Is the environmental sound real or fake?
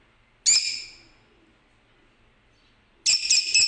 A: real